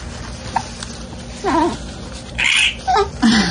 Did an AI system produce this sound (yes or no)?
no